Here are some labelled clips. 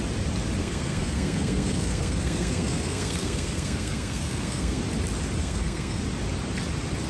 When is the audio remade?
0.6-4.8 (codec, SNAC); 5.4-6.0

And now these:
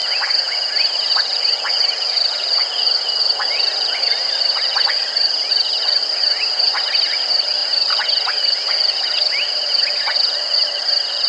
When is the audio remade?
none

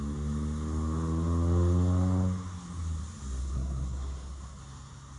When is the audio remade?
3.4-4.6 (codec, SNAC)

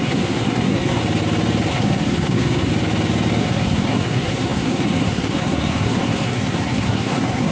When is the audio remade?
0.0-1.0 (codec, SNAC); 1.7-2.7; 3.4-7.5

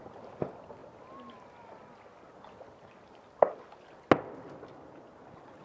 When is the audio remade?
none

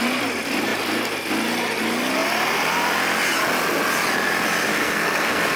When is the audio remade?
4.7-5.6 (codec, SNAC)

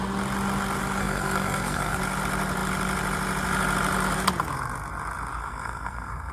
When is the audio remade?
1.0-2.0 (codec, SNAC); 5.4-6.3

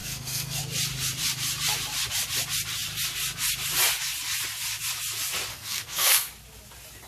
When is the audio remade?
0.0-0.6 (codec, SNAC); 5.5-6.3